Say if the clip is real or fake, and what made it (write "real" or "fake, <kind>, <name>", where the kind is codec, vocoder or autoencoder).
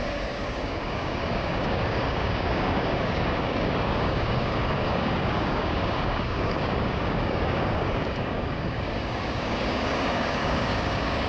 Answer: fake, codec, DAC